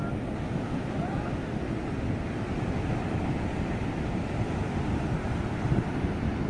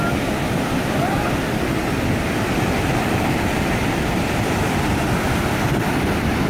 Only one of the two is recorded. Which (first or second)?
first